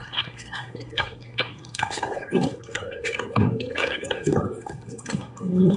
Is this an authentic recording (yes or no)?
no